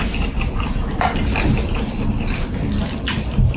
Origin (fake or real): real